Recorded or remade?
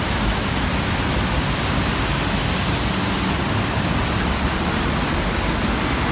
recorded